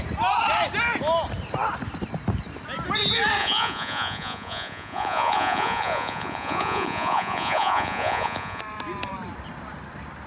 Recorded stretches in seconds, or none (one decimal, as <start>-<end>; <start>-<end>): 0.0-3.4; 8.6-10.3